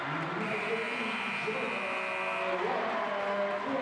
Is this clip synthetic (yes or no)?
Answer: no